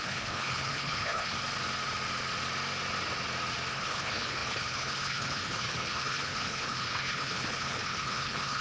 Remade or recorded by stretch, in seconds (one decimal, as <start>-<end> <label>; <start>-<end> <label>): 0.0-1.4 remade; 1.4-3.7 recorded; 3.7-8.6 remade